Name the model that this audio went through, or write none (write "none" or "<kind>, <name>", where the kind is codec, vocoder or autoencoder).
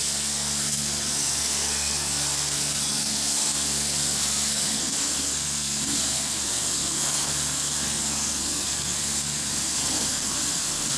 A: codec, SNAC